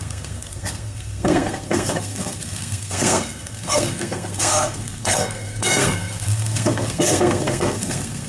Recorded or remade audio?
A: remade